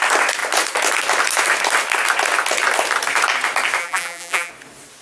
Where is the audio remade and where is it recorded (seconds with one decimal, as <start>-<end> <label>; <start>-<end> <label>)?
0.0-3.8 recorded; 3.8-4.5 remade; 4.5-5.0 recorded